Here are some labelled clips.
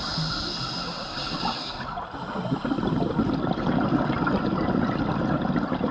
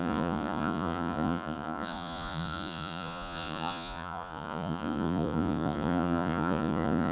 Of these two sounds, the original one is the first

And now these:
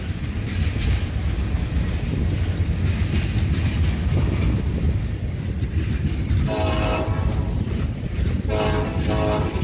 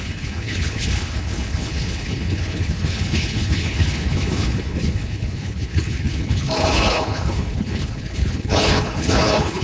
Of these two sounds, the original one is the first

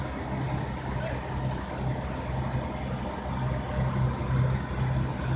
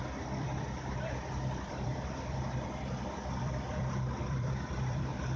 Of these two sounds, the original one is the first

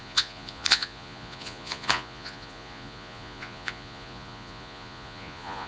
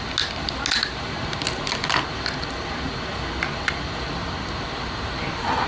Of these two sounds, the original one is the second